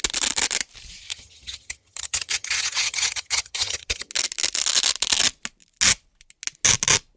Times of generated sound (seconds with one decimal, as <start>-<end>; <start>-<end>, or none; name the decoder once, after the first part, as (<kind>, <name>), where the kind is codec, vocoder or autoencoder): 1.1-4.1 (vocoder, HiFi-GAN)

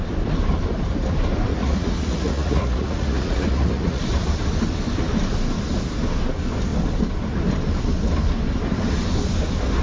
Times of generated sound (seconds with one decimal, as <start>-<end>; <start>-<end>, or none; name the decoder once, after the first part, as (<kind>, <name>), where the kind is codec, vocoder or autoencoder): 1.5-4.0 (vocoder, Vocos)

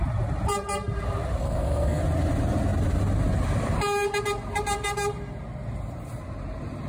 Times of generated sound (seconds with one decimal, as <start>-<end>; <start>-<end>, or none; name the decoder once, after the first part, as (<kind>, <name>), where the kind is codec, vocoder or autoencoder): 1.4-2.0 (codec, SNAC)